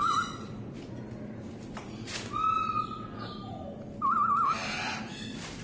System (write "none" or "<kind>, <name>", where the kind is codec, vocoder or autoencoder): none